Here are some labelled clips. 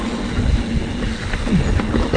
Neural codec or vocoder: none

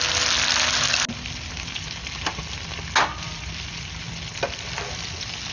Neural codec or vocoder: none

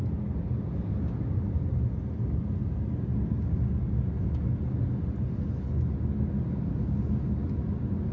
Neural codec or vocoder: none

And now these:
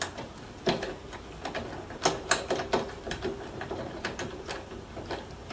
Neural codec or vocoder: none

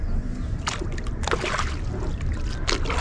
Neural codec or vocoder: none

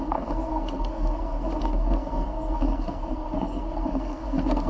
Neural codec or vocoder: codec, SNAC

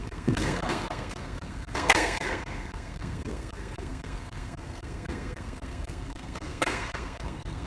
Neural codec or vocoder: codec, SNAC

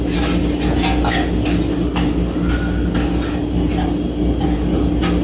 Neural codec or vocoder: none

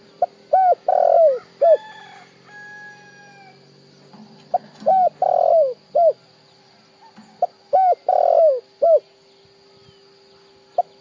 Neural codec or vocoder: none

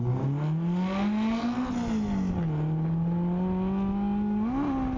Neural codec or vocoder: none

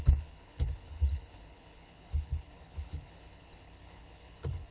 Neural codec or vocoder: codec, HILCodec